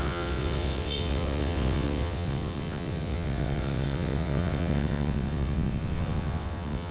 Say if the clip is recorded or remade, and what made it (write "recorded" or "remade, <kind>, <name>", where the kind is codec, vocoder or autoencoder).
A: remade, vocoder, WaveNeXt